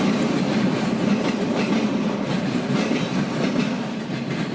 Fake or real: real